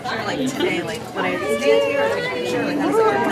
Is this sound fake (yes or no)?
no